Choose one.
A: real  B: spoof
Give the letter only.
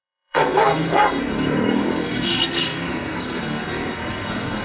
B